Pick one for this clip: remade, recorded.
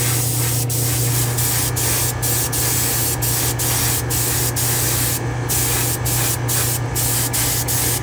recorded